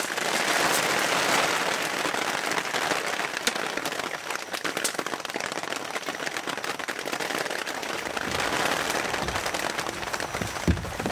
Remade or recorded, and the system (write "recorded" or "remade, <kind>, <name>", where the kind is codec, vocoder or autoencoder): recorded